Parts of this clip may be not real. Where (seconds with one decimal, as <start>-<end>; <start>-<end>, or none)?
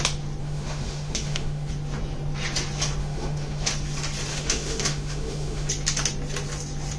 0.4-1.7; 3.0-3.7; 4.3-5.7